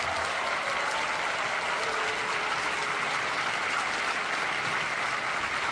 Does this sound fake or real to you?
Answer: real